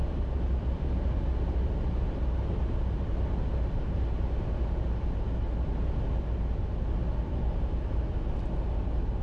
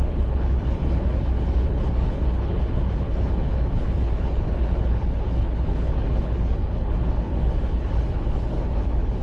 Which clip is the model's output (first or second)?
second